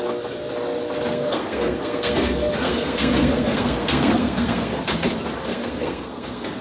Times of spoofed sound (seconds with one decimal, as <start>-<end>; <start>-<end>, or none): 1.1-5.1; 5.5-6.6